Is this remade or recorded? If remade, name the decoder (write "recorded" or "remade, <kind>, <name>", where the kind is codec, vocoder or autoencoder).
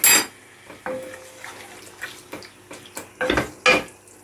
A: recorded